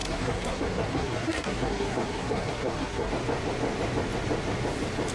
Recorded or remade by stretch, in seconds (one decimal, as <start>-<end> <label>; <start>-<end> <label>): 0.0-3.1 remade; 3.1-5.1 recorded